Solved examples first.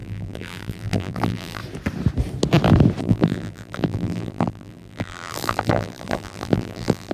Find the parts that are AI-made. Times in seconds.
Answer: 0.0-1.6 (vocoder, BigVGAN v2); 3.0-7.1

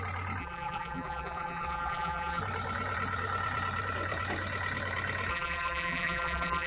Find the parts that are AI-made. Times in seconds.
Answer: 0.4-2.4 (vocoder, BigVGAN v2); 5.3-6.7

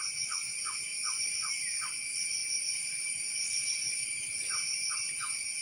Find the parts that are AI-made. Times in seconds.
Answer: 0.9-1.5 (vocoder, BigVGAN v2); 2.4-5.1